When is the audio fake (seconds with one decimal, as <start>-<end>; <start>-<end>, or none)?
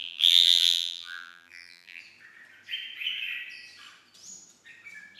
0.0-2.0